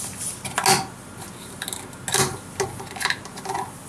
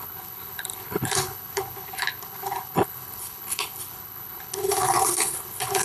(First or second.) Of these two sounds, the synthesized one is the second